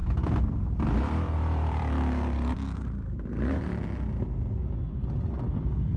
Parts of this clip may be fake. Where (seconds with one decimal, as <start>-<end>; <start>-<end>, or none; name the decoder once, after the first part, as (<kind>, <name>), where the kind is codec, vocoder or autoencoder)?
0.0-3.6 (vocoder, BigVGAN v2)